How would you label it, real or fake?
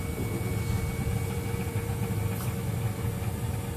real